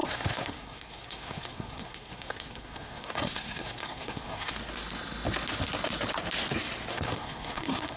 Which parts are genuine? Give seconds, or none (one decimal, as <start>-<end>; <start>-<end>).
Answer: 4.5-6.9